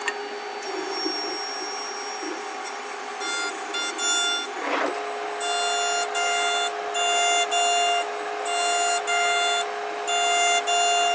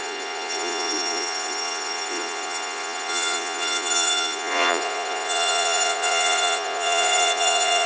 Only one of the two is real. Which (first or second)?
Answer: first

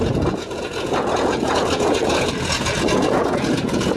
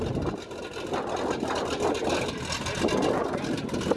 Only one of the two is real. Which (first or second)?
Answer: second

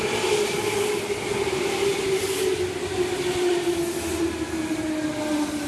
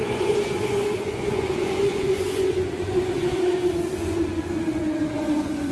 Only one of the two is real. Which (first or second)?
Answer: first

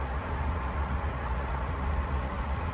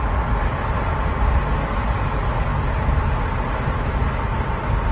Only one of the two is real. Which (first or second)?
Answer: second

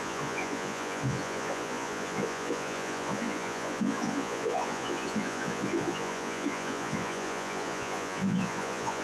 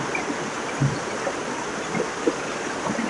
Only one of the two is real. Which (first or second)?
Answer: second